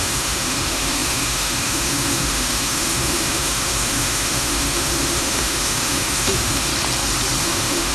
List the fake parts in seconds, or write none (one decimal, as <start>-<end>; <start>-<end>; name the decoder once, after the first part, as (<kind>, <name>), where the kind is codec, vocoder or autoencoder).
0.0-6.7 (autoencoder, DAC-VAE); 7.4-7.9